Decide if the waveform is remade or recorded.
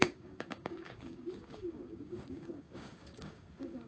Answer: remade